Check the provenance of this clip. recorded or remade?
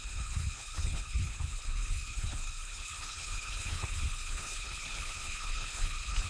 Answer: remade